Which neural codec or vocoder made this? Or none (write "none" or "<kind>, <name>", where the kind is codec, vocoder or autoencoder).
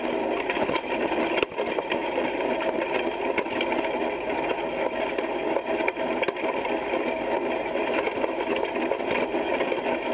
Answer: none